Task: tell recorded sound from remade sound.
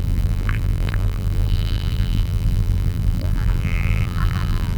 remade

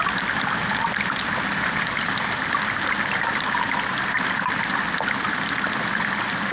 recorded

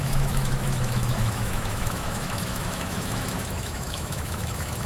remade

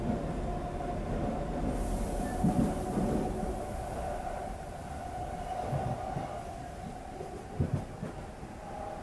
recorded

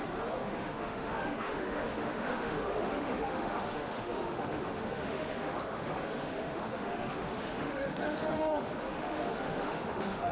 remade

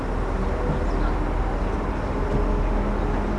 recorded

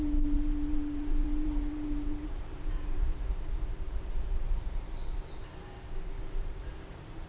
remade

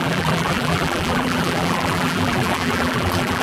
remade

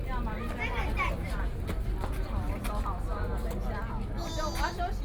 recorded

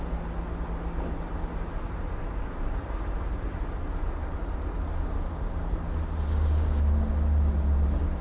recorded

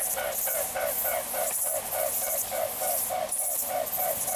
recorded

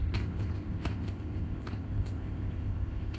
remade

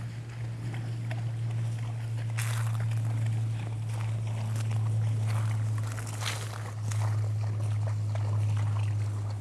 recorded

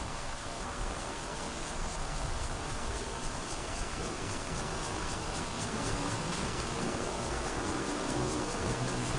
remade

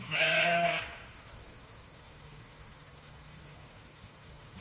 remade